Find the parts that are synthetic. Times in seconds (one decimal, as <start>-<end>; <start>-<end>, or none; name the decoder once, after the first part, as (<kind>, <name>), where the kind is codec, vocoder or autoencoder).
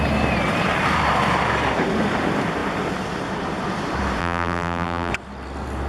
4.2-5.1 (vocoder, BigVGAN v2)